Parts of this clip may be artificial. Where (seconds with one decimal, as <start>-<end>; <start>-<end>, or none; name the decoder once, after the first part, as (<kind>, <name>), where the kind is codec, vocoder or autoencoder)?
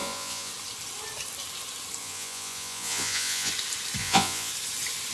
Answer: 0.0-0.5 (vocoder, Vocos); 2.0-3.5; 4.0-4.5